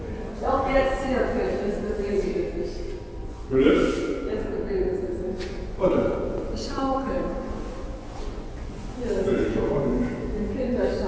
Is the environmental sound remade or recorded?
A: remade